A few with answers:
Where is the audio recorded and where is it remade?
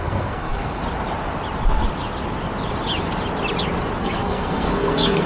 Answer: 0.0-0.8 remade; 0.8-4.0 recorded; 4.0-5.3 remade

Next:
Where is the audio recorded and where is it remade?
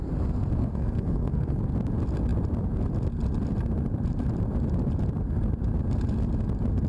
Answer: 0.0-0.6 recorded; 0.6-1.6 remade; 1.6-6.9 recorded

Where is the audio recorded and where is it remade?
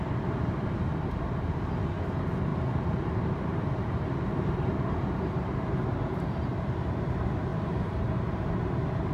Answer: 0.0-2.5 recorded; 2.5-7.1 remade; 7.1-7.5 recorded; 7.5-8.5 remade; 8.5-9.1 recorded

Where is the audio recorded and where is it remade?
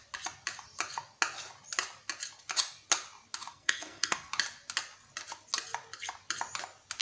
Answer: 0.0-3.5 recorded; 3.5-4.3 remade; 4.3-7.0 recorded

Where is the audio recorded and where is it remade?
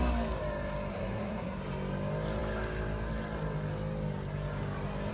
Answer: 0.0-0.9 recorded; 0.9-1.6 remade; 1.6-5.1 recorded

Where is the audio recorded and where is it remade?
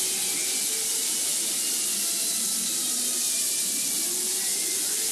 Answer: 0.0-4.5 recorded; 4.5-5.1 remade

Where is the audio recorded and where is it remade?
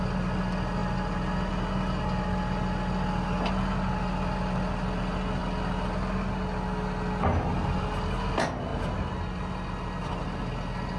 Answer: 0.0-11.0 recorded